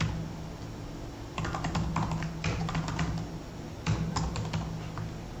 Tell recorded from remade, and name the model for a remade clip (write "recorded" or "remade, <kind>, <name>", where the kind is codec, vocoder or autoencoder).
recorded